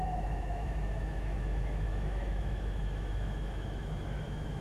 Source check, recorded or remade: remade